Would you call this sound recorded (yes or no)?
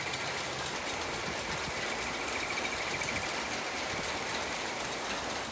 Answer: yes